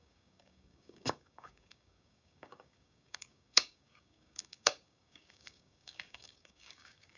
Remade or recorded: remade